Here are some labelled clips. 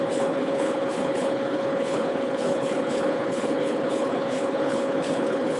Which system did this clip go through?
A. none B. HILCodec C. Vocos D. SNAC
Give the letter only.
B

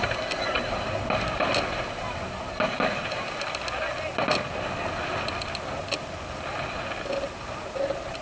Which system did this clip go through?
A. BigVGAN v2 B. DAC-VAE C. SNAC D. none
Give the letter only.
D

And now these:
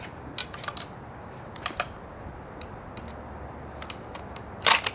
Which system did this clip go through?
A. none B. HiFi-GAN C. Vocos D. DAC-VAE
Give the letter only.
A